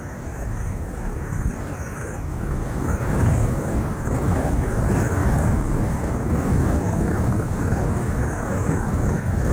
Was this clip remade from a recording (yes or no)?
yes